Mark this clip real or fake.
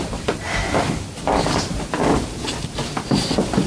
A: fake